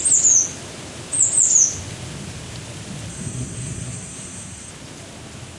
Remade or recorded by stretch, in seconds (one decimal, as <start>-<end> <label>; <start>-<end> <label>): 0.0-3.1 recorded; 3.1-4.7 remade; 4.7-5.6 recorded